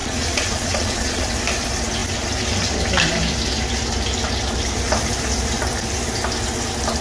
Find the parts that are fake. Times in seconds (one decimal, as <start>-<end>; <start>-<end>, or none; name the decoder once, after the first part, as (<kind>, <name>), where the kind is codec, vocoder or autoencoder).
0.0-1.3 (vocoder, Vocos)